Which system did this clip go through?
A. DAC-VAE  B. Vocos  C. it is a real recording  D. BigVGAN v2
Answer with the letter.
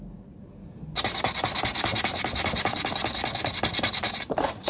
C